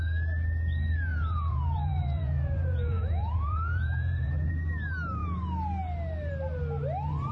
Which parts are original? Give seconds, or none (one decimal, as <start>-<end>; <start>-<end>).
0.0-1.1; 4.5-7.3